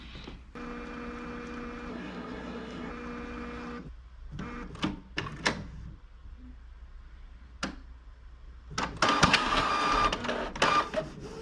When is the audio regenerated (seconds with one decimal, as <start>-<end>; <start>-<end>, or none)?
1.9-2.9; 9.2-9.7